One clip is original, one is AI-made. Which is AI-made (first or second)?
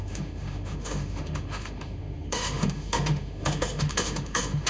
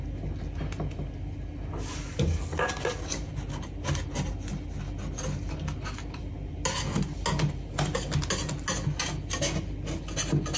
first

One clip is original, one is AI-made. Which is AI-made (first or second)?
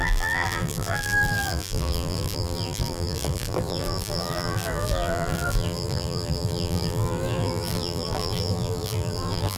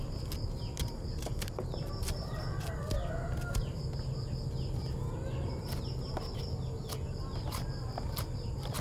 first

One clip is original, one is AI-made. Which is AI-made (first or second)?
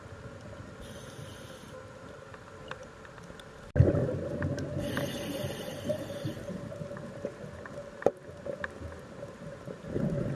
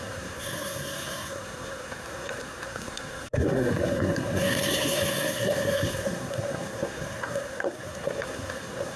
second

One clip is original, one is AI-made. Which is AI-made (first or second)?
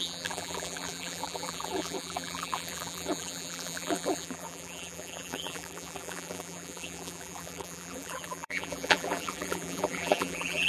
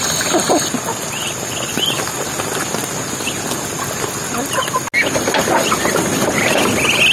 first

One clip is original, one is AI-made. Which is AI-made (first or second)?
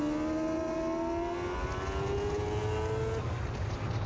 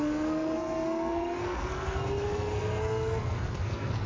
second